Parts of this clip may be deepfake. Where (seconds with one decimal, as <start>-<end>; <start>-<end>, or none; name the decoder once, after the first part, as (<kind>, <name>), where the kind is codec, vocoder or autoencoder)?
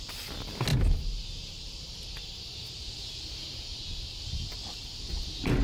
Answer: 0.7-3.1 (vocoder, BigVGAN v2); 3.7-4.2